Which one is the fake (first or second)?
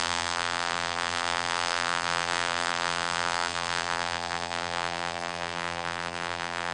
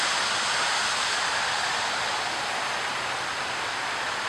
first